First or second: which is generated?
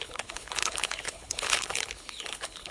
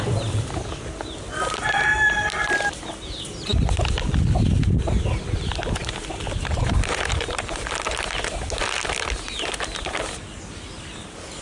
first